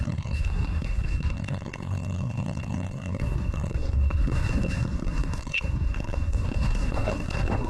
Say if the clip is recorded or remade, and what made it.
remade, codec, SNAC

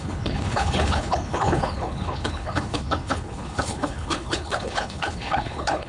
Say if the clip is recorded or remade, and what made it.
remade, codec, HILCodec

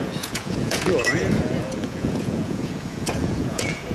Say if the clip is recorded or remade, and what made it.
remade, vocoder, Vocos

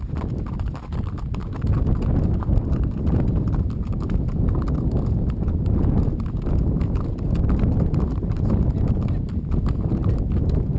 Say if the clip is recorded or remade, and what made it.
recorded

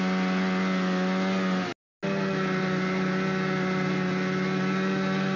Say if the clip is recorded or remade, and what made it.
recorded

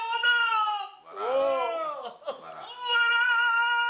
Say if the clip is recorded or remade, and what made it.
recorded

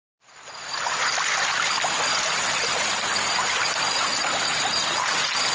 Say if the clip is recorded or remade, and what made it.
recorded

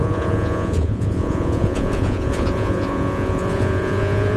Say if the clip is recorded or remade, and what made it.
remade, vocoder, Vocos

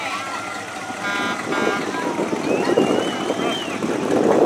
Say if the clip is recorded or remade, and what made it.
recorded